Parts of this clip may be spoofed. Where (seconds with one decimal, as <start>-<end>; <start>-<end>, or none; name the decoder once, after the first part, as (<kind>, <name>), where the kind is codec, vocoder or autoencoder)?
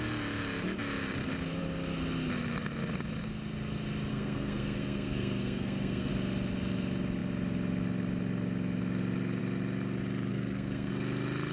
4.1-6.1 (codec, SNAC); 10.3-10.9